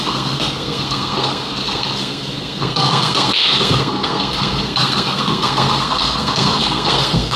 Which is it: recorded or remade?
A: remade